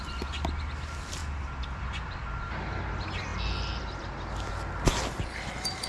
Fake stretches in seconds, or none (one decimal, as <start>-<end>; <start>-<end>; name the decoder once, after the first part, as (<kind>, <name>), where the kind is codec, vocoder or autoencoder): none